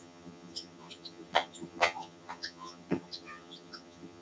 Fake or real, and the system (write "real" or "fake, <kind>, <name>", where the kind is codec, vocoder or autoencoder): fake, vocoder, HiFi-GAN